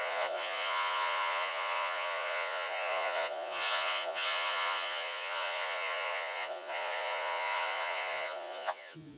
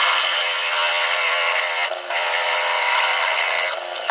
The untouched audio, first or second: second